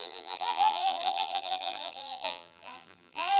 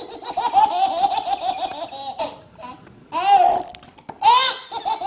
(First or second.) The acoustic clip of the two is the second